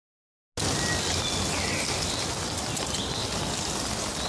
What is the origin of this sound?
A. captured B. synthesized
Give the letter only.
A